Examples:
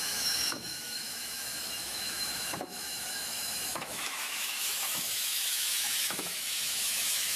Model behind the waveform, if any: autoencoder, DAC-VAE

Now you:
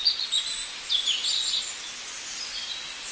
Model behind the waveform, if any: none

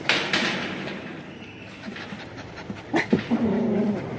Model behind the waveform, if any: vocoder, BigVGAN v2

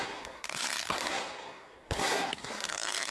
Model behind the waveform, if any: codec, SNAC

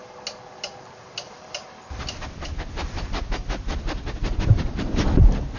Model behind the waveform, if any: none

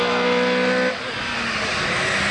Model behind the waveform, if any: none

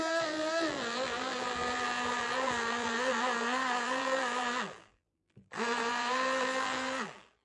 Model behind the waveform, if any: vocoder, BigVGAN v2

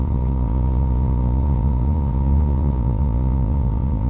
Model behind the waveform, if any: vocoder, Vocos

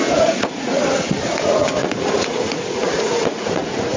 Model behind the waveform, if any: vocoder, Vocos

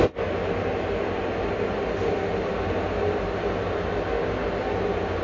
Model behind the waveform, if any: none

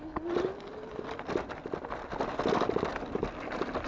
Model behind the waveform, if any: none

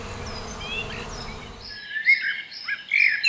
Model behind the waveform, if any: none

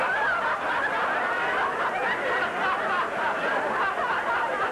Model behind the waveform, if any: none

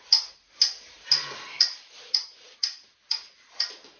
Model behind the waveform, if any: none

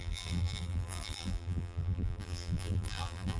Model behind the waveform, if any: vocoder, BigVGAN v2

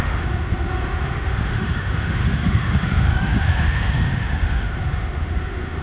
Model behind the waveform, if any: autoencoder, DAC-VAE